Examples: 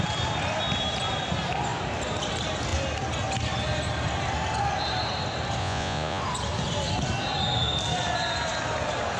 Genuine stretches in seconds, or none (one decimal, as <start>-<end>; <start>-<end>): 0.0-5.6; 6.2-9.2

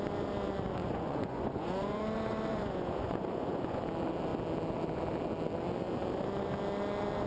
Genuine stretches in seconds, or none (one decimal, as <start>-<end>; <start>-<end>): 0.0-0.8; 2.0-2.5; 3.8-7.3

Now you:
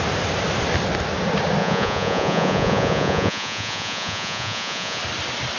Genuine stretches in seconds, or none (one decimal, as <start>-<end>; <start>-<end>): 0.0-1.6; 5.0-5.6

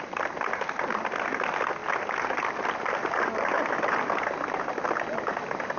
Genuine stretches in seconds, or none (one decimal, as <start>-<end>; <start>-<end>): 0.0-5.8

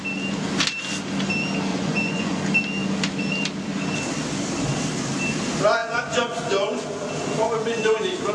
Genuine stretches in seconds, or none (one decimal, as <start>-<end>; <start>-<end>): 0.0-1.7; 2.4-8.3